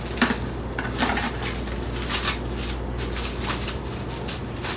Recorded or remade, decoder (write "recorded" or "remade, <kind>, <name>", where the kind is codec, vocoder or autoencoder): recorded